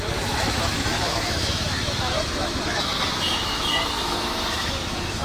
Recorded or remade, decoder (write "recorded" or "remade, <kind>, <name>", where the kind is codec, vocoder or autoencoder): remade, autoencoder, DAC-VAE